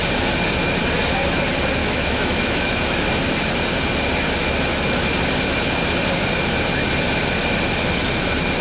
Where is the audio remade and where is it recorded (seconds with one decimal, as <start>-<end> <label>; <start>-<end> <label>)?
0.0-1.8 recorded; 1.8-3.0 remade; 3.0-8.6 recorded

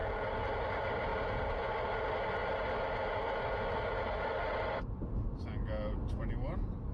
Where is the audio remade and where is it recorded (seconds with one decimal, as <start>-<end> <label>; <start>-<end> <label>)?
0.0-6.9 recorded

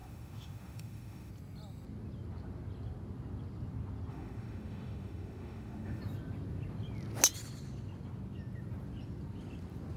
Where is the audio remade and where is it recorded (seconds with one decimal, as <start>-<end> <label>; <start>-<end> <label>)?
0.0-1.3 remade; 1.3-4.1 recorded; 4.1-6.0 remade; 6.0-10.0 recorded

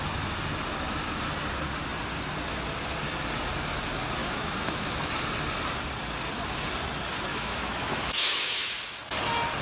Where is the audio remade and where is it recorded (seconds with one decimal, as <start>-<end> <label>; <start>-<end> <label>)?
0.0-4.2 recorded; 4.2-5.1 remade; 5.1-7.3 recorded; 7.3-8.7 remade; 8.7-9.6 recorded

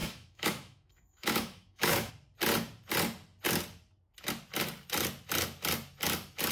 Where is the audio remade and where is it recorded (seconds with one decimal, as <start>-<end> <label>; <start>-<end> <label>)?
0.0-2.1 remade; 2.1-6.5 recorded

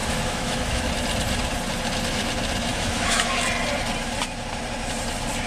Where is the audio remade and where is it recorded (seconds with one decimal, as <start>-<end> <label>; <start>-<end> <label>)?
0.0-0.9 remade; 0.9-2.7 recorded; 2.7-3.4 remade; 3.4-5.5 recorded